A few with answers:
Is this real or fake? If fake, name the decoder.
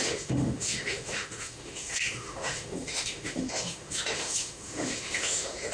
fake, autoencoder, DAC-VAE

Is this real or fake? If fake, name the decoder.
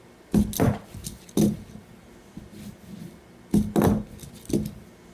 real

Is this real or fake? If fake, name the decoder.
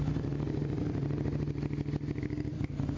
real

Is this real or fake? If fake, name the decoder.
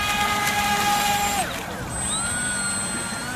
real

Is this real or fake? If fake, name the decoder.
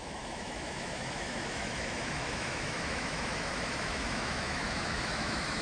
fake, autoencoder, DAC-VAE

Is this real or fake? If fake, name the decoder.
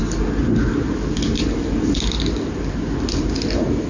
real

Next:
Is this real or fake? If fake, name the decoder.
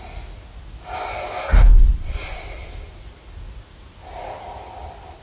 real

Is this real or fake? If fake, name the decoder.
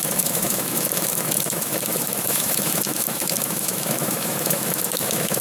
fake, autoencoder, DAC-VAE